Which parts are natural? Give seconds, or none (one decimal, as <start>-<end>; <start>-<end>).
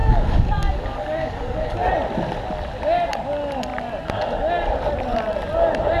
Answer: 1.9-6.0